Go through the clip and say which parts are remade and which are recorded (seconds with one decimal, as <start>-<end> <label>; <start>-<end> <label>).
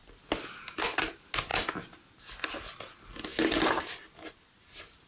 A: 0.0-5.1 recorded